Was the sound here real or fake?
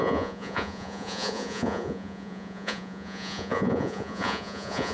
fake